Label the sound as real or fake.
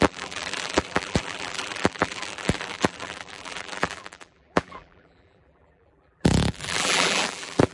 fake